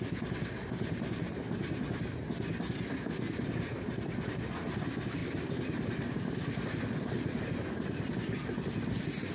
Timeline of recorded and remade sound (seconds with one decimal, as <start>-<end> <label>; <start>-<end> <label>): 0.0-5.2 recorded; 5.2-7.4 remade; 7.4-9.3 recorded